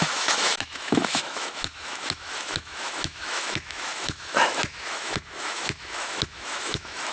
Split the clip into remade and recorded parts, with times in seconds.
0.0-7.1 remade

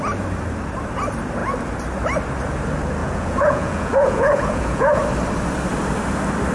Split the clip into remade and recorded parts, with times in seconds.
0.0-3.0 recorded; 3.0-5.0 remade; 5.0-6.5 recorded

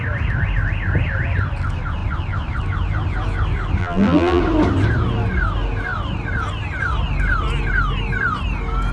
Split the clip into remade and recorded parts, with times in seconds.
0.0-3.8 recorded; 3.8-4.4 remade; 4.4-8.9 recorded

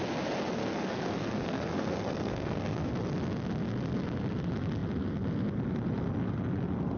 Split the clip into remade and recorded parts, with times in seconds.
0.0-0.6 recorded; 0.6-2.9 remade; 2.9-7.0 recorded

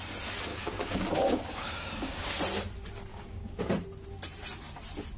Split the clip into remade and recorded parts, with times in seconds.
0.0-0.5 recorded; 0.5-2.4 remade; 2.4-3.1 recorded; 3.1-3.6 remade; 3.6-5.2 recorded

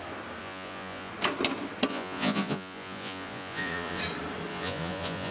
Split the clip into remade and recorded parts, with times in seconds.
0.0-0.4 recorded; 0.4-1.1 remade; 1.1-1.9 recorded; 1.9-4.0 remade; 4.0-4.5 recorded; 4.5-5.3 remade

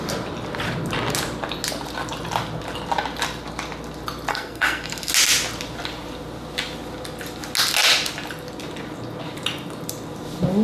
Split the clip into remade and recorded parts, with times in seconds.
0.0-4.3 recorded; 4.3-5.1 remade; 5.1-10.6 recorded

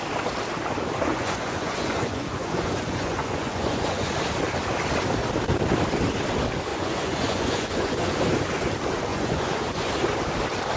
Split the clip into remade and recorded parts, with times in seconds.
0.0-1.1 recorded; 1.1-4.1 remade; 4.1-6.7 recorded; 6.7-8.2 remade; 8.2-9.1 recorded; 9.1-9.9 remade; 9.9-10.8 recorded